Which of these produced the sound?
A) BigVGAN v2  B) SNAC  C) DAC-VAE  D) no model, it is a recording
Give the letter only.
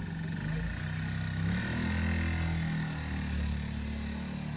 D